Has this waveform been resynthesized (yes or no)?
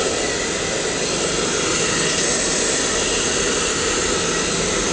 no